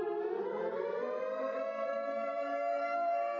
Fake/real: fake